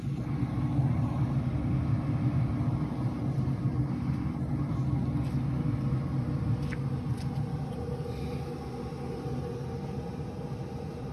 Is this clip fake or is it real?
real